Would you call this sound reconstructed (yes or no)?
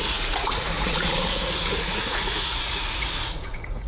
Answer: yes